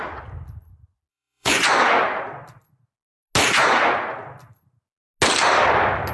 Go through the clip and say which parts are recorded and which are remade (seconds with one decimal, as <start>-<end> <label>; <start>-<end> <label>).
0.0-1.1 recorded; 1.1-1.7 remade; 1.7-6.1 recorded